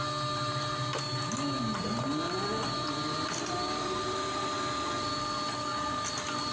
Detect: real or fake real